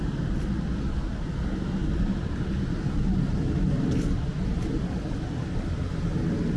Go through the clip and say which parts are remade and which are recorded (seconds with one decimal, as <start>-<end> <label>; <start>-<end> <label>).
0.0-6.6 recorded